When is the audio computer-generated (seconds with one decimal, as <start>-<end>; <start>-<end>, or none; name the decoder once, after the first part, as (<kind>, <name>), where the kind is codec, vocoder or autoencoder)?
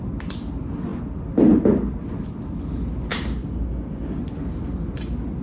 3.1-4.2 (codec, DAC)